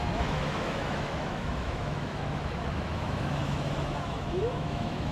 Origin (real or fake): fake